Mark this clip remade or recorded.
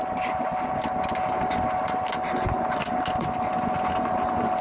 recorded